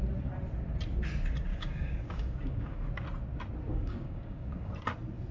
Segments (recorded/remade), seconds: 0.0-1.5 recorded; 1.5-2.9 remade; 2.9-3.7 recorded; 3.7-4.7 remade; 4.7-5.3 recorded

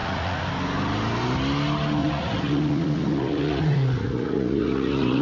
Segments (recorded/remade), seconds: 0.0-0.5 remade; 0.5-2.0 recorded; 2.0-5.2 remade

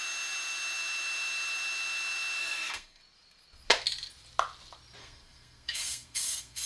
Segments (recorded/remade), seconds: 0.0-2.4 recorded; 2.4-3.0 remade; 3.0-5.0 recorded; 5.0-6.7 remade

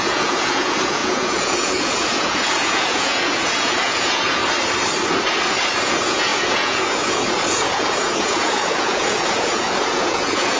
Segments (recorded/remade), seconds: 0.0-4.4 remade; 4.4-5.8 recorded; 5.8-10.6 remade